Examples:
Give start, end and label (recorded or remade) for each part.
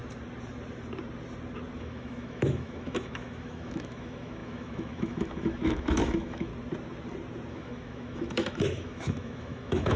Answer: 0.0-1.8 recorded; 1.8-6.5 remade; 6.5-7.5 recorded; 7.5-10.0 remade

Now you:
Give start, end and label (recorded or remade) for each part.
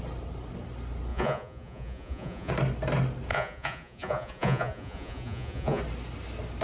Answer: 0.0-1.1 recorded; 1.1-2.5 remade; 2.5-3.3 recorded; 3.3-5.8 remade; 5.8-6.6 recorded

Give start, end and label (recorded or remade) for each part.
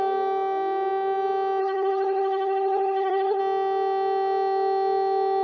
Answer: 0.0-1.6 recorded; 1.6-3.4 remade; 3.4-5.4 recorded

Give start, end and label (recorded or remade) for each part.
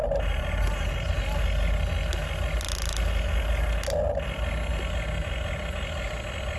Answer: 0.0-1.2 remade; 1.2-6.6 recorded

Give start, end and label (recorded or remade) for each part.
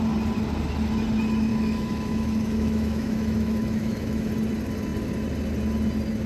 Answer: 0.0-1.5 recorded; 1.5-4.3 remade; 4.3-6.3 recorded